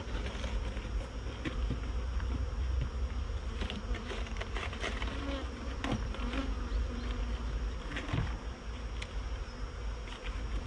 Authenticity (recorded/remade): recorded